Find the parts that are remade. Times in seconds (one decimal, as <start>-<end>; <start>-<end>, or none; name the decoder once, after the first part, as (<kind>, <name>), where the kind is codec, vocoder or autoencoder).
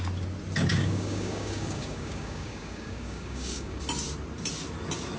0.7-3.8 (codec, DAC)